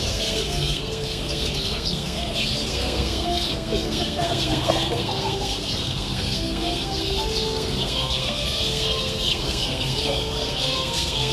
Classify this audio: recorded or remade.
remade